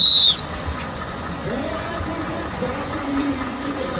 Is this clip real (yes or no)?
no